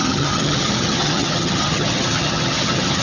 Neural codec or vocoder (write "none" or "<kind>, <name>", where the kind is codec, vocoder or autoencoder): vocoder, HiFi-GAN